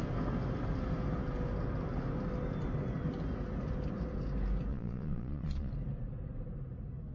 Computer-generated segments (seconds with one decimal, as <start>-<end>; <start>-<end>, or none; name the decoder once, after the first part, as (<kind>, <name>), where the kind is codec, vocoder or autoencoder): 4.7-5.7 (vocoder, Vocos)